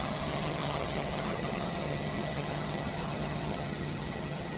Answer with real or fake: fake